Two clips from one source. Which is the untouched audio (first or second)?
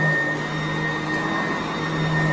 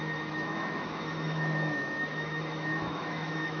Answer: first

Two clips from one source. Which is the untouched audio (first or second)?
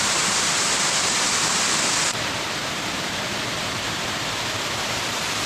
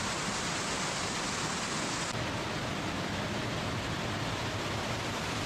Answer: second